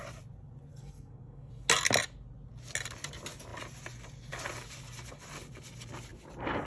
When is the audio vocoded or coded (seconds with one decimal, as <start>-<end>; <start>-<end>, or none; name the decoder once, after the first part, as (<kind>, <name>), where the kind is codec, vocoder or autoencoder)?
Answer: 0.7-1.5 (codec, SNAC)